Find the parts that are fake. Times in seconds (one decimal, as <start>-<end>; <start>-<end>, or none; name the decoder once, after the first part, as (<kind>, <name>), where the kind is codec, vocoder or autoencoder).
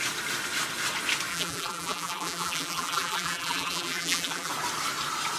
1.3-4.5 (vocoder, BigVGAN v2)